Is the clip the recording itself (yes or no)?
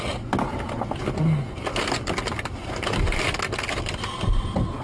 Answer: yes